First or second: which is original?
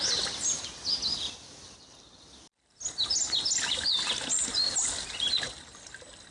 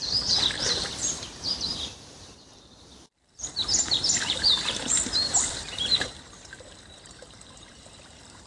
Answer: first